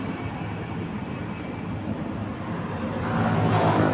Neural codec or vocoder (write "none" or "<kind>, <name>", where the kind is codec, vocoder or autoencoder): none